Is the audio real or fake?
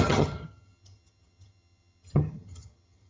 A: fake